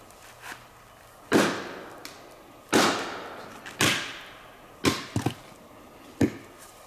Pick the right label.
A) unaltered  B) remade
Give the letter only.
A